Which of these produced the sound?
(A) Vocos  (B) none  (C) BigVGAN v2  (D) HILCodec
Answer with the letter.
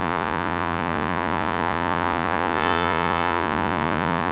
A